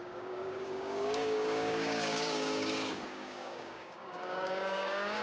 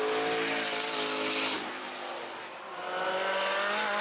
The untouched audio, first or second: second